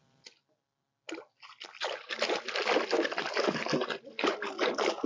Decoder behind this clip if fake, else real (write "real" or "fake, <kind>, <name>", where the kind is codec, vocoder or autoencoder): real